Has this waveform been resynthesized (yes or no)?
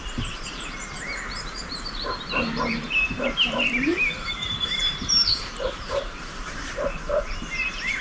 yes